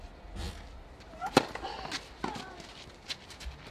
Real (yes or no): yes